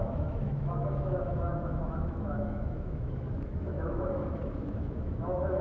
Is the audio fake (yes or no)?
yes